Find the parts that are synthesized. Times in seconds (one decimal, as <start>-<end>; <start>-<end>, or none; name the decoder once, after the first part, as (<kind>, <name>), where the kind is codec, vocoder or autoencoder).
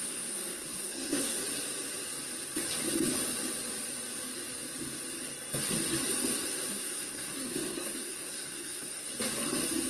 0.0-1.4 (codec, SNAC); 6.7-9.1